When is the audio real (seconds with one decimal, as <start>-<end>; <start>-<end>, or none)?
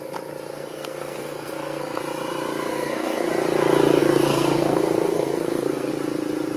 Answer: 0.0-0.5; 2.0-2.7; 3.3-4.0; 5.9-6.6